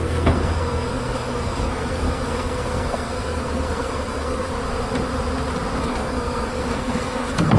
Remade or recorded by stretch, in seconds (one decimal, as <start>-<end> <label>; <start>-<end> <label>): 0.0-4.5 remade; 4.5-5.8 recorded; 5.8-7.6 remade